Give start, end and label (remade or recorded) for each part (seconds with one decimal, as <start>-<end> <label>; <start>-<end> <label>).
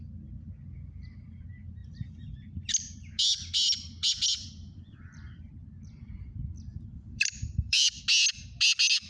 0.0-1.8 recorded; 1.8-5.5 remade; 5.5-6.7 recorded; 6.7-8.0 remade; 8.0-9.1 recorded